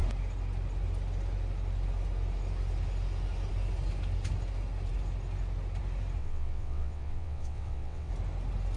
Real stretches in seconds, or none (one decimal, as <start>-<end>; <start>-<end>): 0.0-6.2; 8.1-8.8